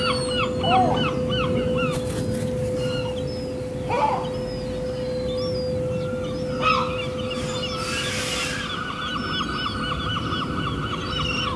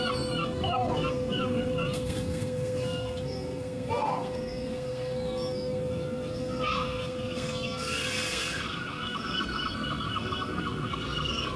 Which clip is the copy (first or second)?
second